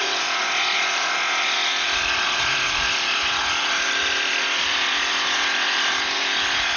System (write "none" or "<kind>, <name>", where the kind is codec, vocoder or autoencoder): vocoder, Vocos